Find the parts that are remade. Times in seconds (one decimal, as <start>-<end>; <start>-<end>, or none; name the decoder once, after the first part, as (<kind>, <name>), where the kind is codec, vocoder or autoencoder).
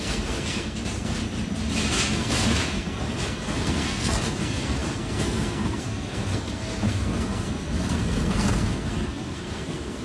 0.0-1.2 (codec, SNAC); 1.9-10.0